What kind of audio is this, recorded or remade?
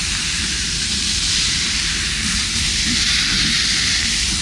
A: remade